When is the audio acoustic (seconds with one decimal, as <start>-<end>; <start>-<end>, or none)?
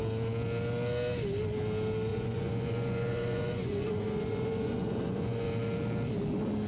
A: 0.0-2.1; 5.5-6.7